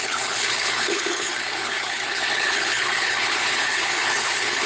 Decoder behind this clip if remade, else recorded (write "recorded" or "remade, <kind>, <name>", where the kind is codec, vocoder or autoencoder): remade, codec, HILCodec